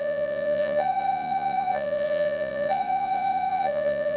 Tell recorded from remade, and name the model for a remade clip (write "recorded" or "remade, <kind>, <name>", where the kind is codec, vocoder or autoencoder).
remade, vocoder, Vocos